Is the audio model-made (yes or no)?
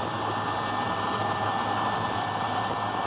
no